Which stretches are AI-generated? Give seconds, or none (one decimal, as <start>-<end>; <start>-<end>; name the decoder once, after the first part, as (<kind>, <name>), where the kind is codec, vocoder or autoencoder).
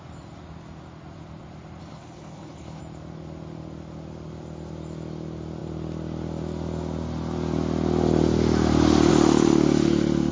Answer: 1.8-2.8 (codec, HILCodec)